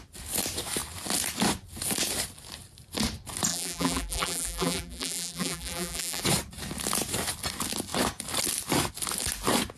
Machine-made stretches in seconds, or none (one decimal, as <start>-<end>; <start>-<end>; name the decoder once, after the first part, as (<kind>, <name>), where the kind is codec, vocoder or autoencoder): 3.5-6.2 (vocoder, BigVGAN v2)